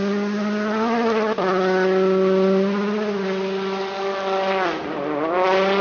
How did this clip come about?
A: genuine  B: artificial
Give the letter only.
A